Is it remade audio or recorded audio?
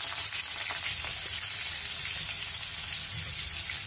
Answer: recorded